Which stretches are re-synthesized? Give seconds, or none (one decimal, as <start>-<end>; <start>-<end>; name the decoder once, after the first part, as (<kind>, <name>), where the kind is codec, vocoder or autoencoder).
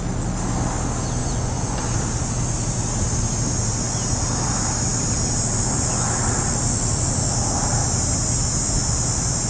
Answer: 1.2-1.8 (vocoder, Vocos)